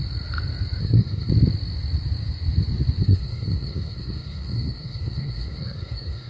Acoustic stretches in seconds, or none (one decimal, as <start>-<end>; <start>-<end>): 0.0-0.8; 1.3-3.0